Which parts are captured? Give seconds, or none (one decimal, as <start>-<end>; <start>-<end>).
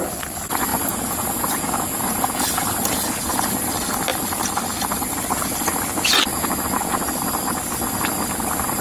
0.0-0.7; 3.5-6.3; 7.0-8.8